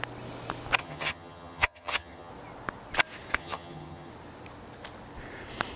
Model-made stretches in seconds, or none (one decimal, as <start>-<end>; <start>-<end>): 0.8-2.3; 3.4-4.1